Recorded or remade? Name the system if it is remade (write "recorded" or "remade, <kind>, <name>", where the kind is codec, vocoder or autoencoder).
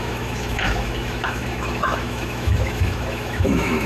remade, autoencoder, DAC-VAE